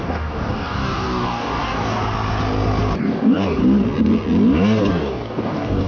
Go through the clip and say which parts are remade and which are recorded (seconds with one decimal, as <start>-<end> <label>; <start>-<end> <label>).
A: 0.0-2.0 remade; 2.0-3.0 recorded; 3.0-3.6 remade; 3.6-4.9 recorded; 4.9-5.9 remade